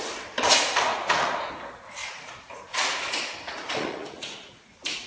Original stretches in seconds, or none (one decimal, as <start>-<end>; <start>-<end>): 0.0-0.9; 1.5-2.0